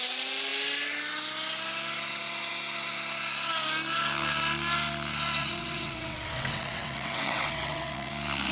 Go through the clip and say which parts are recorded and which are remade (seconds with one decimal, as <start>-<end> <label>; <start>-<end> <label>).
0.0-5.4 recorded; 5.4-8.1 remade; 8.1-8.5 recorded